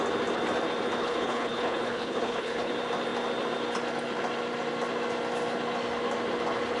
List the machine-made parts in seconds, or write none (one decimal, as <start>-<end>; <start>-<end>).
1.0-2.7